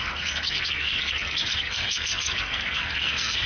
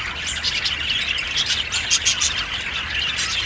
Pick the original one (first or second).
second